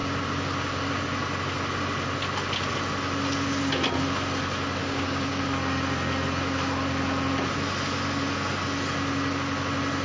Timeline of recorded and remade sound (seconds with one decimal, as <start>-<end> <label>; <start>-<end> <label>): 0.0-4.8 recorded; 4.8-5.4 remade; 5.4-10.0 recorded